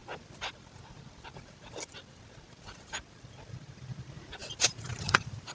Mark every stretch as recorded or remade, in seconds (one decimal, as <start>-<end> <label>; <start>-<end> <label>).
0.0-5.5 remade